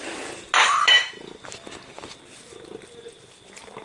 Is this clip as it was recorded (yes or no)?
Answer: yes